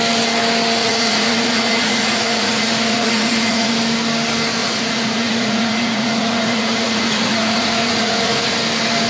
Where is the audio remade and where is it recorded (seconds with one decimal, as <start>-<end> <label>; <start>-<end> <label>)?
0.0-0.8 recorded; 0.8-3.7 remade; 3.7-4.6 recorded; 4.6-8.5 remade; 8.5-9.1 recorded